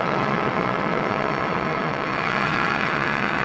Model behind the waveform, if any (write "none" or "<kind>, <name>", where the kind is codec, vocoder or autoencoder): vocoder, WaveNeXt